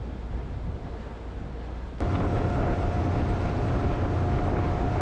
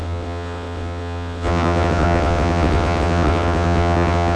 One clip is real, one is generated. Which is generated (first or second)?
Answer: second